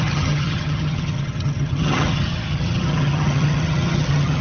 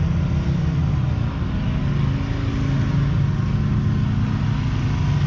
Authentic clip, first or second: second